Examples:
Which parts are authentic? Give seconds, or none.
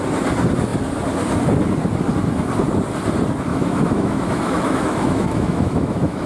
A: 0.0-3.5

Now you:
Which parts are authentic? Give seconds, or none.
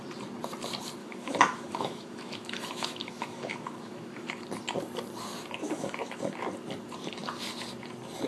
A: 0.0-1.0; 4.4-5.6; 6.2-8.3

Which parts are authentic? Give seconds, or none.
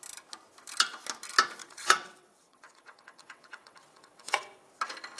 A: 0.0-1.6; 4.7-5.2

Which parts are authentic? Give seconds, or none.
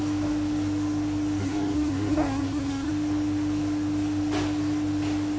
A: 0.0-1.4; 2.9-5.4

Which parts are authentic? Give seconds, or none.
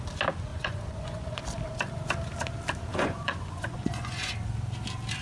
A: 0.0-0.5; 1.4-2.9; 4.3-5.2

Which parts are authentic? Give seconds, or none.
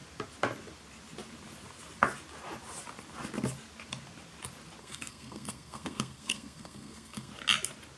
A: 0.0-4.8; 7.3-8.0